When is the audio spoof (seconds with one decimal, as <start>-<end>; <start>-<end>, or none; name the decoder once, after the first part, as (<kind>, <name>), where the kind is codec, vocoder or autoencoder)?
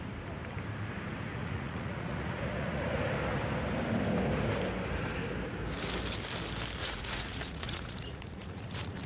1.3-3.0 (vocoder, Vocos); 6.8-9.1